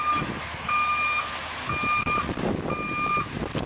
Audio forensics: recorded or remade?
recorded